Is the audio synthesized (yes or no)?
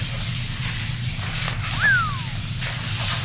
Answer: no